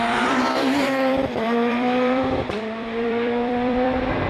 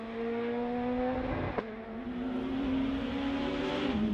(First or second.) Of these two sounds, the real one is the second